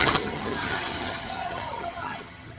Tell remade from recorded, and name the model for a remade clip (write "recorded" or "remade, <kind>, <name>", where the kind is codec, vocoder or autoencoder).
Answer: remade, vocoder, HiFi-GAN